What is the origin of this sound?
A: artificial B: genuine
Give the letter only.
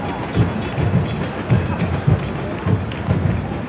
B